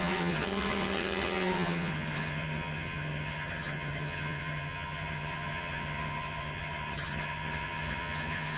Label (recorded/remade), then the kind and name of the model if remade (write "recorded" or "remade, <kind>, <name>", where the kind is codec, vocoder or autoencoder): remade, vocoder, HiFi-GAN